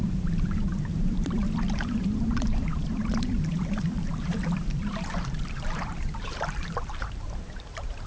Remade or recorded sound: remade